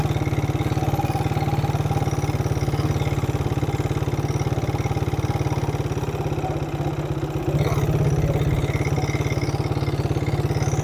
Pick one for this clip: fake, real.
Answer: real